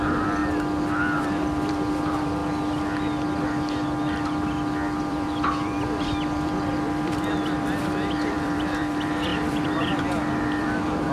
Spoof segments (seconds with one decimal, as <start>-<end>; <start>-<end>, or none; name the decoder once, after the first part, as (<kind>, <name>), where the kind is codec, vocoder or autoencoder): 0.0-0.4 (vocoder, BigVGAN v2); 1.2-2.4; 5.1-11.1

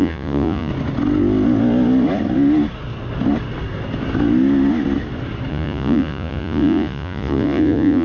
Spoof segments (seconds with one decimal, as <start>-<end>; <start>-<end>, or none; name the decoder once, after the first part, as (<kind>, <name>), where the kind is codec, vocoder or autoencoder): 0.0-0.7 (vocoder, Vocos); 5.5-8.0

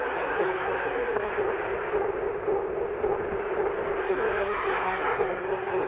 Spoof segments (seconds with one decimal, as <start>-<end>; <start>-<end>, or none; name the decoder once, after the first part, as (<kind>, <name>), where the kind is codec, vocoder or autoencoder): 0.0-1.3 (codec, SNAC); 4.0-5.9

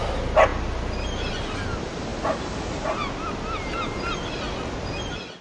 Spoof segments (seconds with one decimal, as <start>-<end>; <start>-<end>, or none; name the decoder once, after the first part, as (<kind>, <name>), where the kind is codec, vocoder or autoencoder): none

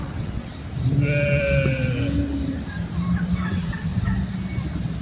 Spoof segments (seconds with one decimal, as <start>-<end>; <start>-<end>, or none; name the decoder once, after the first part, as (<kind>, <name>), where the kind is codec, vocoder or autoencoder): 0.0-0.5 (vocoder, WaveNeXt); 3.5-3.9